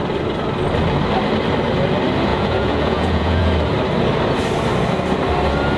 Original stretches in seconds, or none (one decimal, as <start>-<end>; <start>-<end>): 0.0-2.3; 3.5-5.8